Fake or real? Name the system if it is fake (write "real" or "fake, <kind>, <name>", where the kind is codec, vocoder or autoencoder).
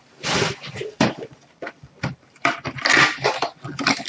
fake, vocoder, BigVGAN v2